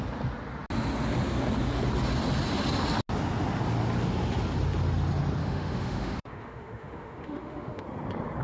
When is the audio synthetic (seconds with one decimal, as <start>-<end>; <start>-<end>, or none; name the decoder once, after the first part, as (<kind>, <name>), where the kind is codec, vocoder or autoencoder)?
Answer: 5.4-7.8 (autoencoder, DAC-VAE)